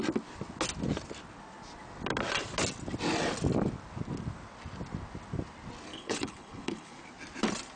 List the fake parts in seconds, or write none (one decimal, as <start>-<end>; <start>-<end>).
5.9-7.0

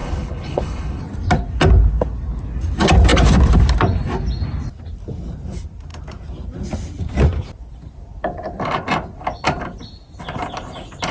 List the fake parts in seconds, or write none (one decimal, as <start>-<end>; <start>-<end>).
0.0-1.0